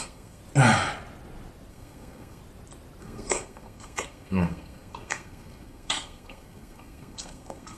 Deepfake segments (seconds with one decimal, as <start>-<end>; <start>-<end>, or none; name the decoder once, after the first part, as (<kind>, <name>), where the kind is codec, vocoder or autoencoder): 0.0-0.4 (codec, SNAC); 1.7-2.4; 3.0-7.8